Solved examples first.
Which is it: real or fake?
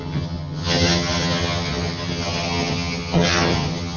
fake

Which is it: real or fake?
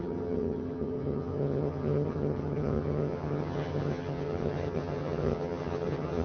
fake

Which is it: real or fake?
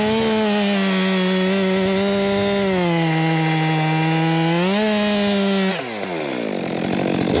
real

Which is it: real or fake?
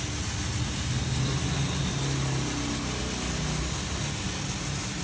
real